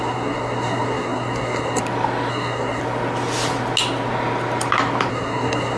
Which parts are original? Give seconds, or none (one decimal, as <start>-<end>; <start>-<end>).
1.8-2.3; 2.8-5.1

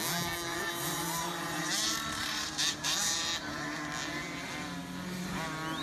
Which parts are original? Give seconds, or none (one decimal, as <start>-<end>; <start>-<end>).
0.0-0.5; 3.3-5.8